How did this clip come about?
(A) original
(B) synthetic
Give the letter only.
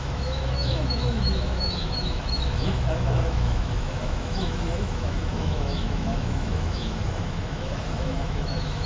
B